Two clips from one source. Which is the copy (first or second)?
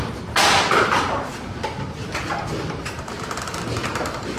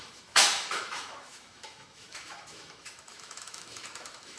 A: second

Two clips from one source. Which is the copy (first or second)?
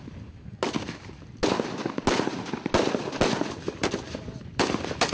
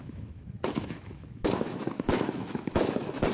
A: second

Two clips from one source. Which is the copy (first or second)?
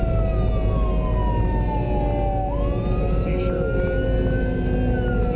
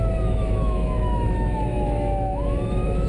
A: second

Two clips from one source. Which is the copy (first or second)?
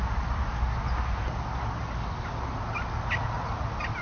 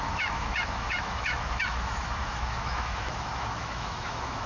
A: second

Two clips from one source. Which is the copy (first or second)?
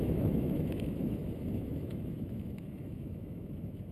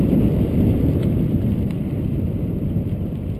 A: first